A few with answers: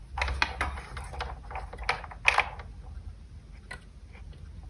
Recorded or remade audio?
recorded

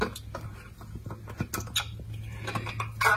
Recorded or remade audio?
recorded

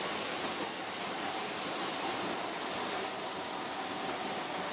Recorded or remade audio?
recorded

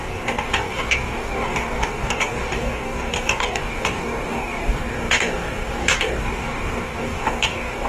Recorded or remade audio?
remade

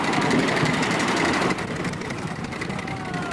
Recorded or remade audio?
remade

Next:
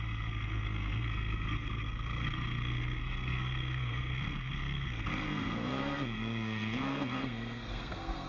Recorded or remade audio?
remade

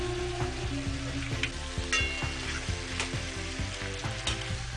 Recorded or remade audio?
recorded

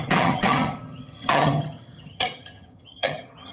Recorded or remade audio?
remade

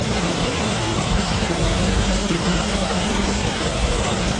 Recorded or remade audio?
remade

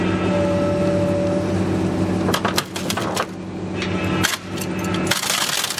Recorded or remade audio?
recorded